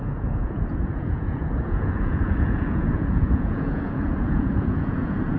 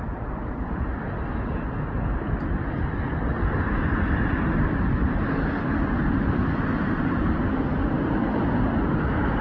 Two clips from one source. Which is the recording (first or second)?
second